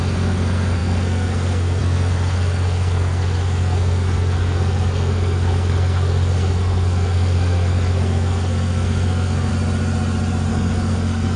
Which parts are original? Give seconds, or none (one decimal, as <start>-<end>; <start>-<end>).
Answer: 9.5-10.5